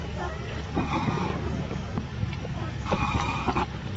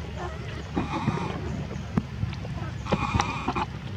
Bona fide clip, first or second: second